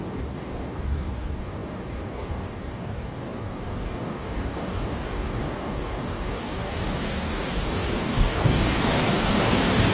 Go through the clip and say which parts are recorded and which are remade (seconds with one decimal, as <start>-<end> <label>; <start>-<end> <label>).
0.0-9.9 remade